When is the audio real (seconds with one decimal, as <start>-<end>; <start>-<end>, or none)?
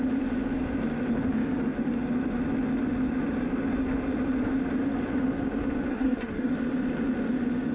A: 0.0-5.9; 6.5-7.7